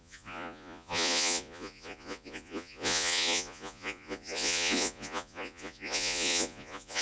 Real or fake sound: fake